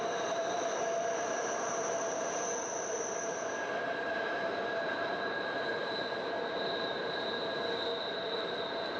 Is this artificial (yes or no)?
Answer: yes